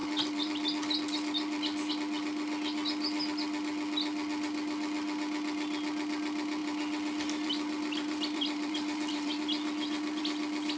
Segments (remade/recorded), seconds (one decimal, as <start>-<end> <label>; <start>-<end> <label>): 0.0-1.9 remade; 1.9-6.6 recorded; 6.6-10.2 remade; 10.2-10.8 recorded